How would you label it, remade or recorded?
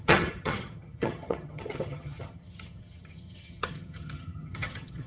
remade